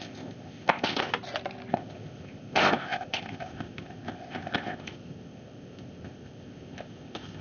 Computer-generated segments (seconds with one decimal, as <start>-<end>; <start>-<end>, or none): 0.0-1.1; 1.7-7.4